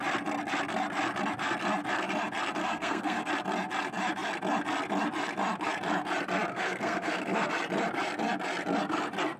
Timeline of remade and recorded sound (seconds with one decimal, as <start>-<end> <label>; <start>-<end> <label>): 0.0-2.6 recorded; 2.6-3.3 remade; 3.3-6.5 recorded; 6.5-7.5 remade; 7.5-9.4 recorded